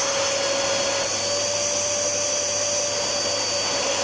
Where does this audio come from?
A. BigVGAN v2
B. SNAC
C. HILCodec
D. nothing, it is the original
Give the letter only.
D